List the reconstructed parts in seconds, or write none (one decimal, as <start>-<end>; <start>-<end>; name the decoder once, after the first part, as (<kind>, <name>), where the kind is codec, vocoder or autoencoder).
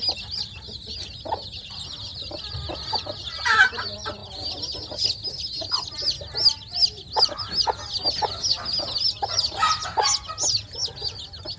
2.1-3.7 (vocoder, BigVGAN v2)